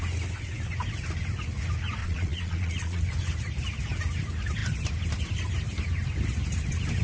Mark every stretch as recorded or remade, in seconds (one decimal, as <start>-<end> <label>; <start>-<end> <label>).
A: 0.0-2.0 recorded; 2.0-3.0 remade; 3.0-7.0 recorded